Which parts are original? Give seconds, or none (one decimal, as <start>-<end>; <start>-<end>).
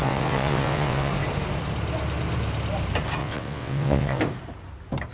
1.1-3.2; 4.2-5.1